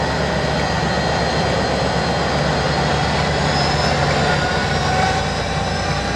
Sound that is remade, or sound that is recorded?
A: recorded